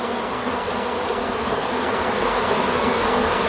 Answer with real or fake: fake